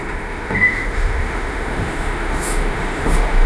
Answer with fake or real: fake